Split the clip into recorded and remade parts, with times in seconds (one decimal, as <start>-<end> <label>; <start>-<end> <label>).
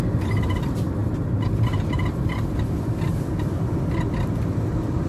0.0-5.1 recorded